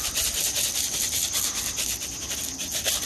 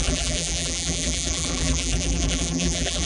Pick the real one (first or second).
first